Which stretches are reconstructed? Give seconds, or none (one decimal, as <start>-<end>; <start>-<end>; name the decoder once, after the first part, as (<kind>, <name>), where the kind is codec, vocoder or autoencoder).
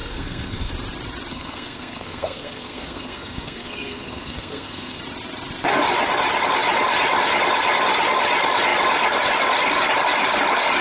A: 0.0-0.7 (codec, SNAC); 1.3-5.0